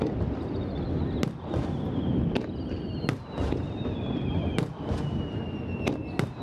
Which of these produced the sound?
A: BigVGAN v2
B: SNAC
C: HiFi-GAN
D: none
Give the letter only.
D